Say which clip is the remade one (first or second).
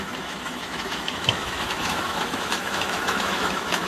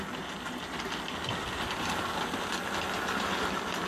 first